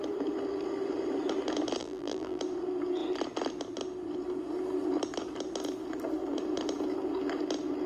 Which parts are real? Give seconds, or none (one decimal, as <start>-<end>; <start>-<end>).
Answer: 0.0-1.8; 2.4-7.9